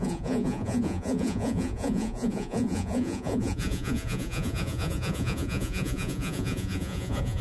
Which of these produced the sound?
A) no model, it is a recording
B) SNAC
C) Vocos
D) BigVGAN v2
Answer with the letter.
C